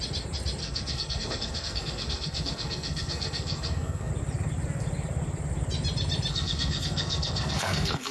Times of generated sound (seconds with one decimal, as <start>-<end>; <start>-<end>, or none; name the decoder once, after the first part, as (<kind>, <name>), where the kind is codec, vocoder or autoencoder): 0.6-4.1 (codec, SNAC); 6.3-8.1